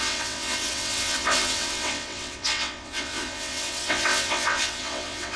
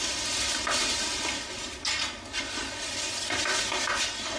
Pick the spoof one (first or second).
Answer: first